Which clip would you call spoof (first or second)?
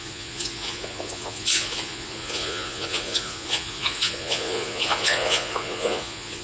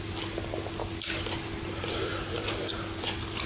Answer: first